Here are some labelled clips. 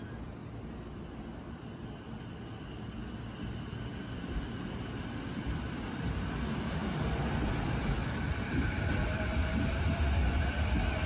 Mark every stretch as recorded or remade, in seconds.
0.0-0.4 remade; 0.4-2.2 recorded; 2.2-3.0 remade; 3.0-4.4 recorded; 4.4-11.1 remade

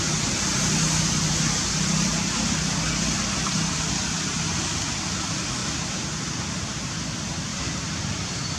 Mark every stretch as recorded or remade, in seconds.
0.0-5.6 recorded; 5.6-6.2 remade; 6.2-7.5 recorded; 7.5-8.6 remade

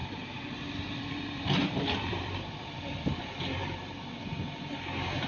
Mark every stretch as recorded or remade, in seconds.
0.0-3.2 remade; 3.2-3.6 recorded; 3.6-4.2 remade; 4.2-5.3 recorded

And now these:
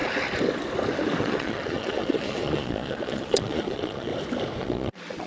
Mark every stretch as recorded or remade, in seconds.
0.0-1.2 recorded; 1.2-4.1 remade; 4.1-4.6 recorded; 4.6-5.3 remade